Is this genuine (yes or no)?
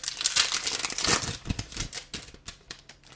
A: yes